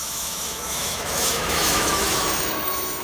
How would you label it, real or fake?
fake